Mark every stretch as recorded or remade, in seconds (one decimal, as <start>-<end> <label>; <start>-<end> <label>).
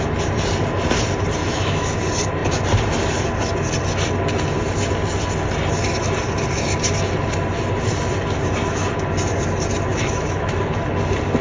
0.0-1.4 recorded; 1.4-2.0 remade; 2.0-9.9 recorded; 9.9-10.6 remade; 10.6-11.4 recorded